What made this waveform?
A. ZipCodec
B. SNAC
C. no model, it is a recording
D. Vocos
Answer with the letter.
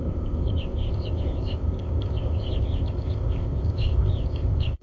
A